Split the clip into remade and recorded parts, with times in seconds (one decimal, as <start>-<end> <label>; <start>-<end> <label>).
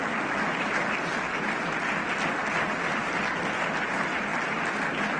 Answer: 0.0-5.2 recorded